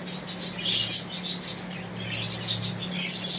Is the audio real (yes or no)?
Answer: yes